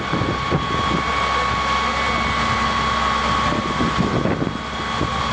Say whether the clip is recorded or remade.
recorded